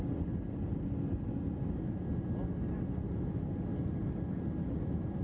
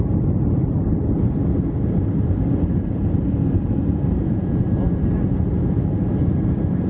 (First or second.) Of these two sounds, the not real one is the second